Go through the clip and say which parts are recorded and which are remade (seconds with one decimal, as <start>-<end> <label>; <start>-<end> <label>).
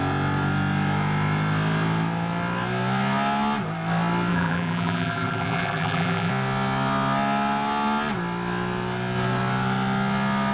0.0-4.3 recorded; 4.3-6.3 remade; 6.3-10.5 recorded